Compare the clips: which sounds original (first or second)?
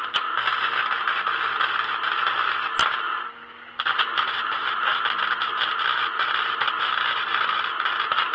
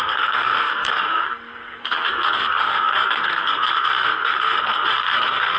first